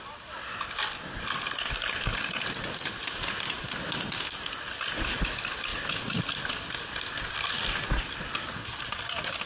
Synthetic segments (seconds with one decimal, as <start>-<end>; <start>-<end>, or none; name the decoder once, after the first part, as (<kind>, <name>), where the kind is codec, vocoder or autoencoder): none